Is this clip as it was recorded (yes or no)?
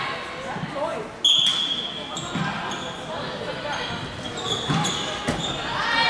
yes